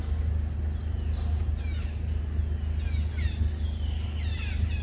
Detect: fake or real real